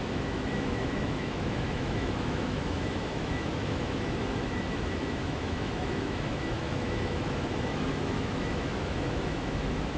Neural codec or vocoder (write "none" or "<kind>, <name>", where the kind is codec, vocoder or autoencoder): autoencoder, DAC-VAE